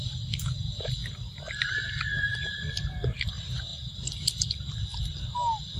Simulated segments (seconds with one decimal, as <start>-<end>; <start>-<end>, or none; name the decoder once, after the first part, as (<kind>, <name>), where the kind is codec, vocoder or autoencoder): none